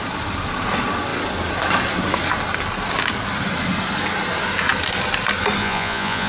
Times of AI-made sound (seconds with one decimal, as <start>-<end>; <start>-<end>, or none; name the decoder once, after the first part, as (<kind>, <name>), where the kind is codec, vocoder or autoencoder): 5.6-6.3 (vocoder, Vocos)